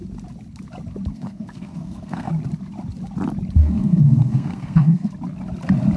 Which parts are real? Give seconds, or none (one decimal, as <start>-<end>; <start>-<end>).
0.0-1.1; 2.3-3.6; 5.1-6.0

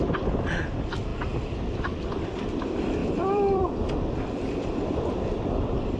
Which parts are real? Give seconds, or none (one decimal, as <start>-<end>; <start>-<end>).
0.0-1.1; 2.3-3.0

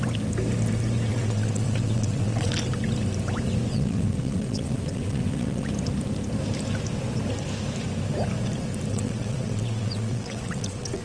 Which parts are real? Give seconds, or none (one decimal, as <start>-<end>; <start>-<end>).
0.0-1.1; 2.5-3.7; 5.7-8.9

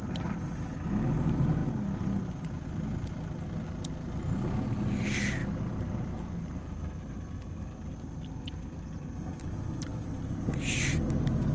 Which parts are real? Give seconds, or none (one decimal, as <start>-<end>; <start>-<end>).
0.0-11.5

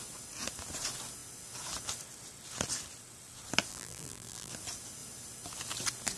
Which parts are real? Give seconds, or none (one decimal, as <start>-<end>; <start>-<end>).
0.0-3.7; 4.5-6.2

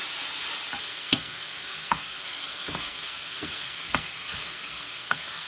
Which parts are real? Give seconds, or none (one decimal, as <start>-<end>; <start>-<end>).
0.0-0.8